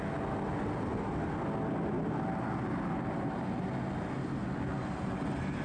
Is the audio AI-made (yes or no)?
no